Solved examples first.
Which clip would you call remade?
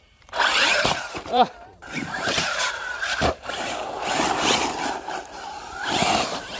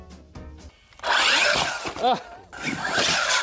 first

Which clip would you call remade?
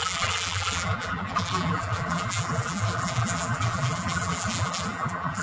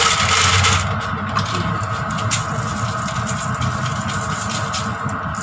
first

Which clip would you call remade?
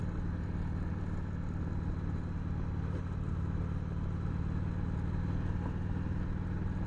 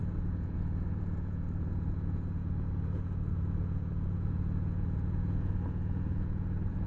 second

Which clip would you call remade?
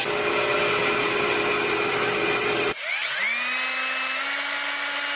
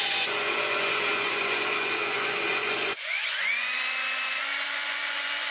second